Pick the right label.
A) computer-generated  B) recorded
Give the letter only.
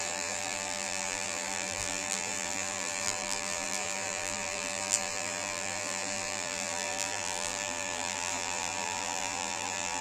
A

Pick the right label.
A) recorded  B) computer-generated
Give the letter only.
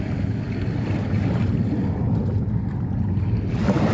A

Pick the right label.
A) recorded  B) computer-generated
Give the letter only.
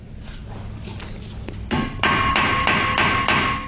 A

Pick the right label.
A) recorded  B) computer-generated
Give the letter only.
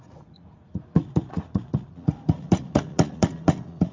B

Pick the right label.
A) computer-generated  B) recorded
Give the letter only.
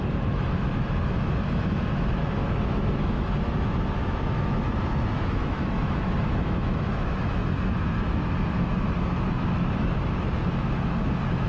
A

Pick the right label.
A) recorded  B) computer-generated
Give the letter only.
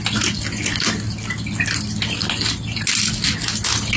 A